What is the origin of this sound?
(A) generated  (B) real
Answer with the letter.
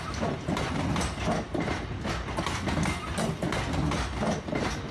B